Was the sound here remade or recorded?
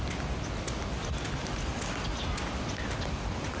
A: recorded